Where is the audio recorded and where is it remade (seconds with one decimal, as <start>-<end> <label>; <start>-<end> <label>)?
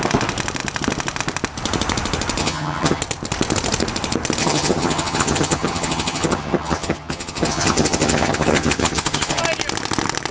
0.0-2.4 recorded; 2.4-3.0 remade; 3.0-4.4 recorded; 4.4-9.4 remade; 9.4-10.3 recorded